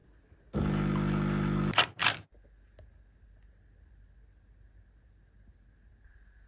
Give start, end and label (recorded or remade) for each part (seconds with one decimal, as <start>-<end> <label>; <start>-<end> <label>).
0.0-6.5 recorded